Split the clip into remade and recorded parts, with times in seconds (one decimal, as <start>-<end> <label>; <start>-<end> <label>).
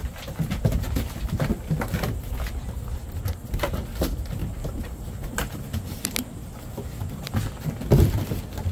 0.0-4.4 recorded; 4.4-6.0 remade; 6.0-8.7 recorded